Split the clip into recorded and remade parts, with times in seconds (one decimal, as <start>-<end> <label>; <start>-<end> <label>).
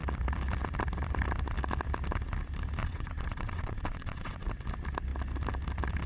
0.0-2.8 recorded; 2.8-4.5 remade; 4.5-6.1 recorded